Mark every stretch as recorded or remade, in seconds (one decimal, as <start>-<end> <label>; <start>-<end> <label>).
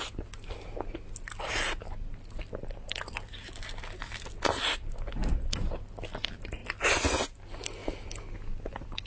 0.0-9.1 recorded